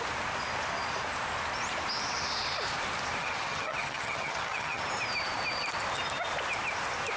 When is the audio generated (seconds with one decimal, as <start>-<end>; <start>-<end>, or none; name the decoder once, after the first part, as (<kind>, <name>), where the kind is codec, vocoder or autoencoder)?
3.2-4.8 (vocoder, HiFi-GAN)